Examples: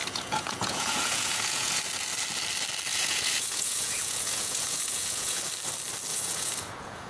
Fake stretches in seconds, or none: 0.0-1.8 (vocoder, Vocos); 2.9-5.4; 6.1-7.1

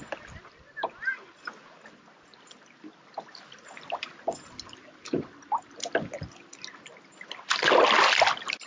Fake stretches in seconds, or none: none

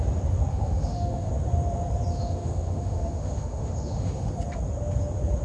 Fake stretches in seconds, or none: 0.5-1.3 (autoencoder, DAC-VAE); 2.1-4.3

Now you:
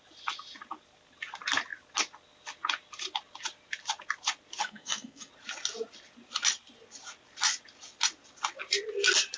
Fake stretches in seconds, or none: 4.6-5.3 (codec, SNAC)

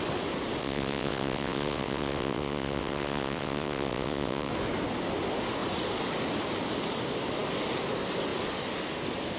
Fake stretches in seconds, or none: 0.6-4.5 (vocoder, WaveNeXt)

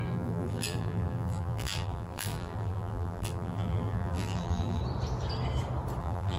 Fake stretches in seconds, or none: 0.0-4.8 (vocoder, BigVGAN v2); 6.0-6.4

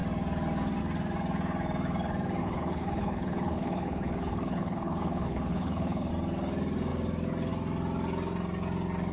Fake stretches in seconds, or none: 2.4-6.1 (codec, HILCodec)

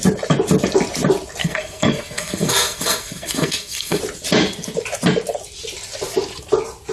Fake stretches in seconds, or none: 1.4-4.0 (codec, SNAC)